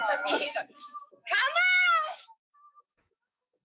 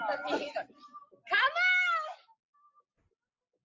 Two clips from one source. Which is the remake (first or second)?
first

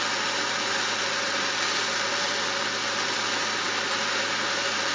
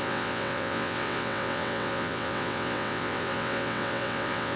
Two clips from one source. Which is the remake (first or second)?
second